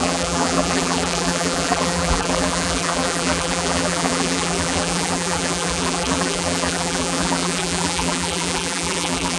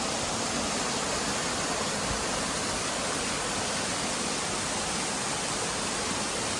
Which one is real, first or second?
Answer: second